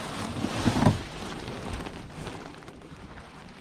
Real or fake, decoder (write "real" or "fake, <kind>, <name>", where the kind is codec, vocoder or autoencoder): fake, vocoder, BigVGAN v2